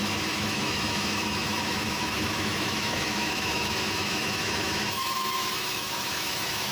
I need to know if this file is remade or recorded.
remade